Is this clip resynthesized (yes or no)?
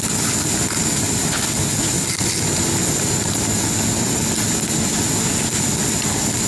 no